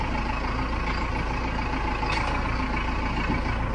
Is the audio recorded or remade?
recorded